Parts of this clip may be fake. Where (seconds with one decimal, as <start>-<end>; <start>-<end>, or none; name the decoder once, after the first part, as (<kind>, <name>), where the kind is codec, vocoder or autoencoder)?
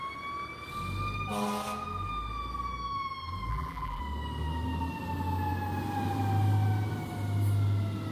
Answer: 3.5-4.0 (vocoder, BigVGAN v2)